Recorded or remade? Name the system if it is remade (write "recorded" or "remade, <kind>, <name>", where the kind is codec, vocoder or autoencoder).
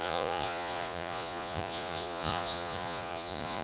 remade, vocoder, Vocos